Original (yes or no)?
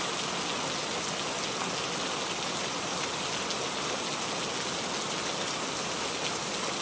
yes